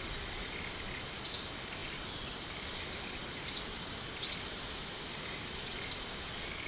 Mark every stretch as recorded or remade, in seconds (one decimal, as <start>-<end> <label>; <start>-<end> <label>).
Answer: 0.0-6.7 recorded